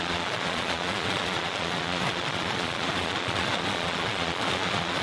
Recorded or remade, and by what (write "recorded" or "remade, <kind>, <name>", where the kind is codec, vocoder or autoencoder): remade, vocoder, Vocos